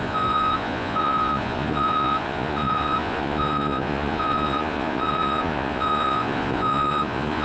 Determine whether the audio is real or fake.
fake